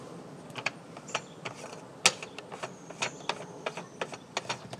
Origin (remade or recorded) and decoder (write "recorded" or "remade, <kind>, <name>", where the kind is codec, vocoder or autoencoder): recorded